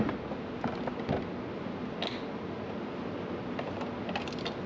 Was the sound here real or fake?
real